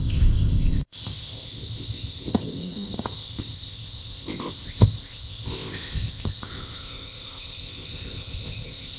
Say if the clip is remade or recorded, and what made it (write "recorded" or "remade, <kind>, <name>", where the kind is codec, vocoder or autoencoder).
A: remade, codec, ZipCodec